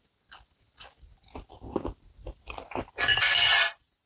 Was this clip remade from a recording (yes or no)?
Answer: no